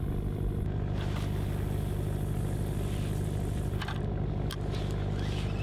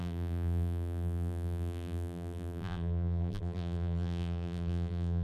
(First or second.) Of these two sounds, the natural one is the first